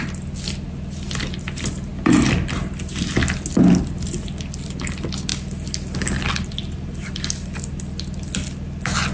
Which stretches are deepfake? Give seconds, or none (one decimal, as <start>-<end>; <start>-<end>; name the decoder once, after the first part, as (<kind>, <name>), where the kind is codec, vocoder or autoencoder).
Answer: none